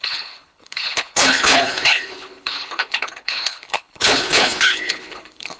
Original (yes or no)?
no